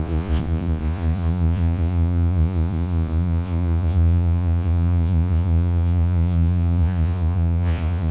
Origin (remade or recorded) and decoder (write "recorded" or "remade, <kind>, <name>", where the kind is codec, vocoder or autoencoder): remade, vocoder, Vocos